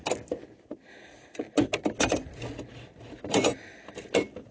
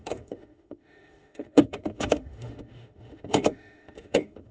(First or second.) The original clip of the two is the first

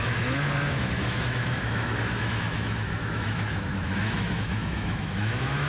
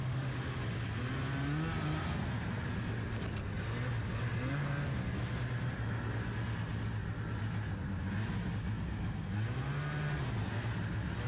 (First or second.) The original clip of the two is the second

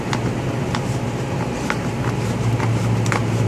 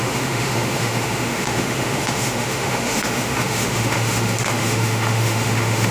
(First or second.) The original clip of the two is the first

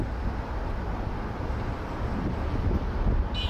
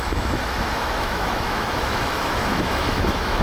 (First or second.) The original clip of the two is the first